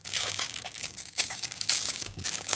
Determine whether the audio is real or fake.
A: fake